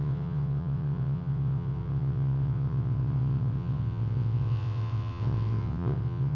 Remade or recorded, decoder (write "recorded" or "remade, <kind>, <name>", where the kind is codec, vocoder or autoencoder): remade, vocoder, WaveNeXt